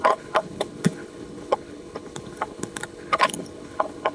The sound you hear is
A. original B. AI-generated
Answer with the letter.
B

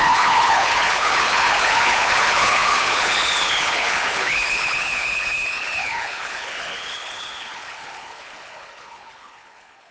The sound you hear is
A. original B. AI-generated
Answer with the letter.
B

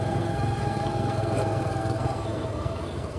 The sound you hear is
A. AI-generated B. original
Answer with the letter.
A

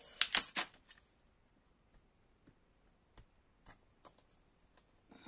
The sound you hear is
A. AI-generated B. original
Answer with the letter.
B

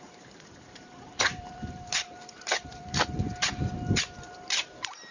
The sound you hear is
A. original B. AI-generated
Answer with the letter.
B